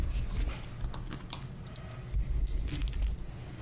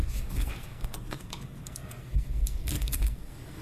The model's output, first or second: second